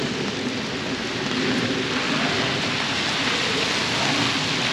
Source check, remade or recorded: recorded